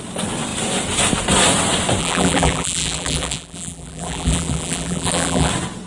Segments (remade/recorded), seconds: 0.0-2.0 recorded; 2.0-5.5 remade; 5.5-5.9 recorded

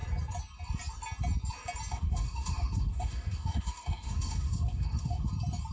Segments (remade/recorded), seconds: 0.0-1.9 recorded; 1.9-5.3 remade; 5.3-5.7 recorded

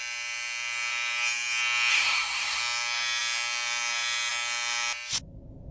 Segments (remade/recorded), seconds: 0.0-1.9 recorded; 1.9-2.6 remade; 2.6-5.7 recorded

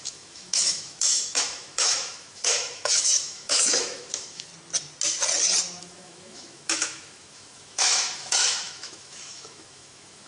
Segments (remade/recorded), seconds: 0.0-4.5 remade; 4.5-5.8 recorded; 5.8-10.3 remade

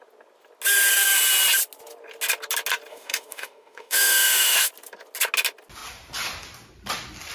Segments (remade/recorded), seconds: 0.0-2.9 recorded; 2.9-4.7 remade; 4.7-7.3 recorded

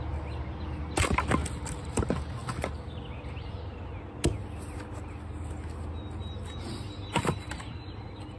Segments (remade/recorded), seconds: 0.0-8.4 recorded

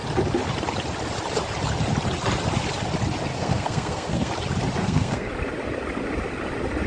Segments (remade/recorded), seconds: 0.0-3.3 recorded; 3.3-4.3 remade; 4.3-4.8 recorded; 4.8-5.3 remade; 5.3-6.9 recorded